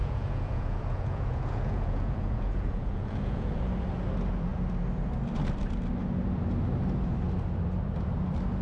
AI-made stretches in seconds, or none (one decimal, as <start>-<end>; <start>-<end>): 0.0-3.6